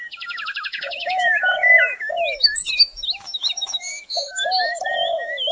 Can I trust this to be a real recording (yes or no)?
no